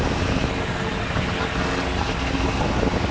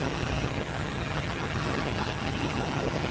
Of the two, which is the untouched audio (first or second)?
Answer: first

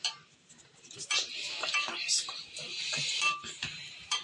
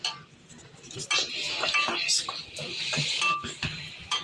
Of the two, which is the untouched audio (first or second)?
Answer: second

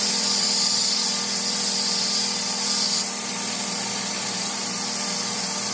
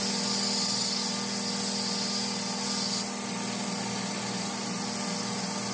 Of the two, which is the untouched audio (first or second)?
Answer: second